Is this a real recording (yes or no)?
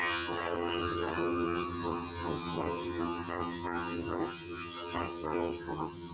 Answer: no